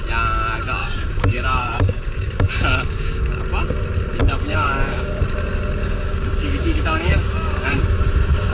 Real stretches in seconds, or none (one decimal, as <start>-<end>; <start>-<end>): 0.0-0.8; 3.4-4.2; 5.2-5.8; 7.8-8.5